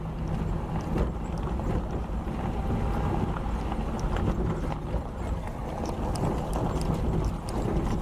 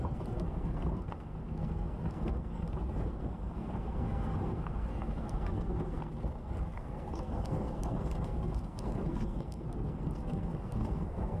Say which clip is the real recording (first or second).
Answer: first